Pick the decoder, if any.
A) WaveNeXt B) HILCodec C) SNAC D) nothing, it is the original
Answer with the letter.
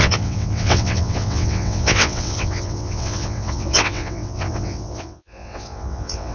A